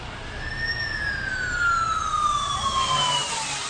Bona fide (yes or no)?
yes